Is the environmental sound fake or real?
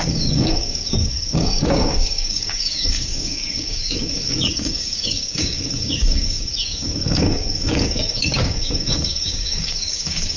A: fake